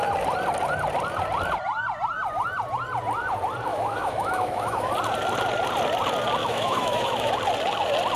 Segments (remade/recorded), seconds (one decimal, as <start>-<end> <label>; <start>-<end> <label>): 0.0-3.7 recorded; 3.7-4.9 remade; 4.9-6.4 recorded; 6.4-7.3 remade; 7.3-8.2 recorded